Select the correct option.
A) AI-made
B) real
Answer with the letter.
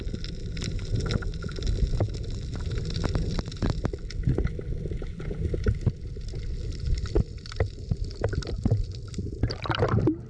A